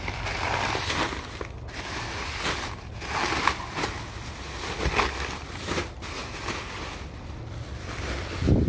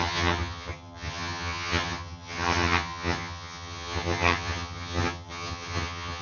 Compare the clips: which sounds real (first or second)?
first